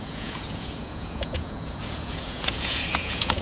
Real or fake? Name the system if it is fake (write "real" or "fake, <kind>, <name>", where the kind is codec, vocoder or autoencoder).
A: fake, vocoder, Vocos